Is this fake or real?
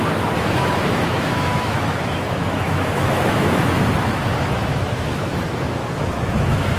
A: fake